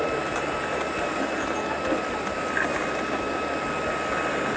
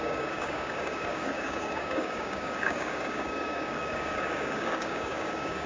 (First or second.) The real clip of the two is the first